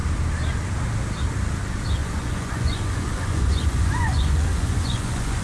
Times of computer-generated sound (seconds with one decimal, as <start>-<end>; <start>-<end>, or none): 2.0-5.4